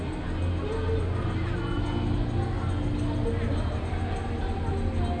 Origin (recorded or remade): recorded